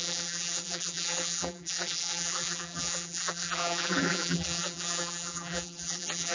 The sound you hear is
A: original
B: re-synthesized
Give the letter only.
B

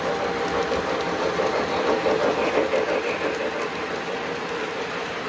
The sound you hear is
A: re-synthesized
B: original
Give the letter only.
B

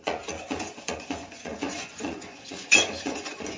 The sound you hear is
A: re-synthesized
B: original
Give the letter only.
A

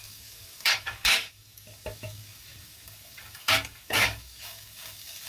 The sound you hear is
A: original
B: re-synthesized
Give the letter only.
B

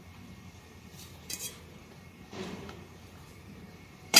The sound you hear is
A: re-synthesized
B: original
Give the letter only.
A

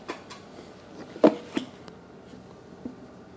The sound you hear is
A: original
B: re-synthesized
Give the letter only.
A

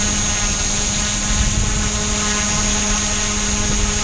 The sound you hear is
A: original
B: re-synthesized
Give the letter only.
A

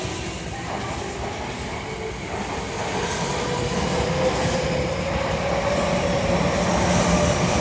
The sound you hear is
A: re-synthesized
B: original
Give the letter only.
B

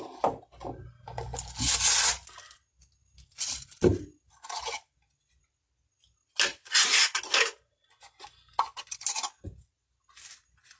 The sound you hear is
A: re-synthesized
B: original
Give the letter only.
B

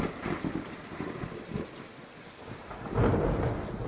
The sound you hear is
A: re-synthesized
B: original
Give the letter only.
B